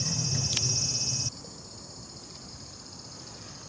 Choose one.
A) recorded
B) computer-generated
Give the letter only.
B